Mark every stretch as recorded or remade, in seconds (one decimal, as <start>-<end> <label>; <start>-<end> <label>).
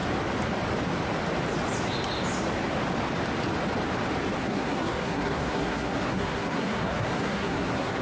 0.0-4.4 recorded; 4.4-8.0 remade